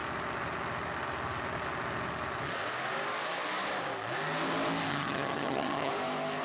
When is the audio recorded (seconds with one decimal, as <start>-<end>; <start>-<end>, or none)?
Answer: 0.0-4.9; 5.9-6.4